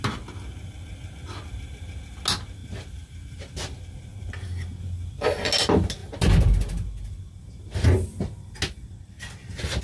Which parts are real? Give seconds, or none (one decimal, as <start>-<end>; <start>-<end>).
0.0-9.8